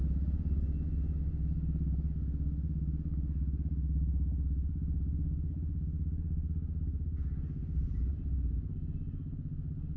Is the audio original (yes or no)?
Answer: yes